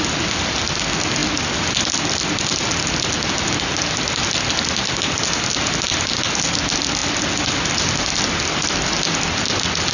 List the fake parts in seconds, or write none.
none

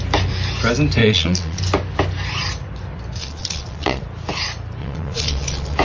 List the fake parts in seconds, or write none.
1.0-1.6 (vocoder, Vocos); 3.2-4.0; 4.8-5.8

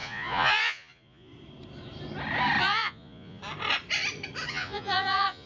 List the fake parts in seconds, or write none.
0.0-1.3 (vocoder, Vocos); 2.6-3.4; 4.5-5.5

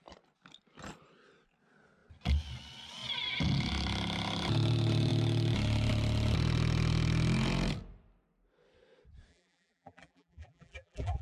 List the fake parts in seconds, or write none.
9.3-11.2 (vocoder, BigVGAN v2)

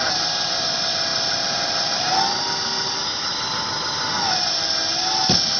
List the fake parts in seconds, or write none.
1.1-2.1 (vocoder, BigVGAN v2)

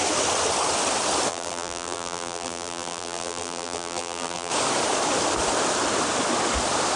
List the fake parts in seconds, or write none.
1.3-4.5 (vocoder, BigVGAN v2)